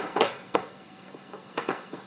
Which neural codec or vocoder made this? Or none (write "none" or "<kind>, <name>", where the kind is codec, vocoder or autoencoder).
codec, SNAC